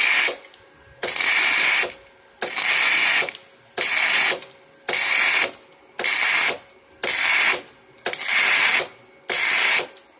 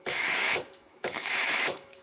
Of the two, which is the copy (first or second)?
second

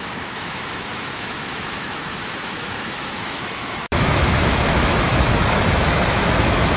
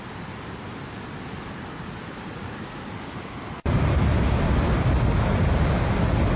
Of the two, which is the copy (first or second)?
first